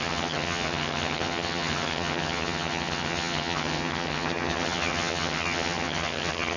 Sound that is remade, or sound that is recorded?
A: remade